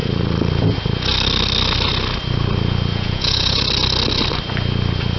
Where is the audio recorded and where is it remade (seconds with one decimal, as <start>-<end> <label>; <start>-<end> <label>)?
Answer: 0.0-2.9 recorded; 2.9-3.6 remade; 3.6-5.2 recorded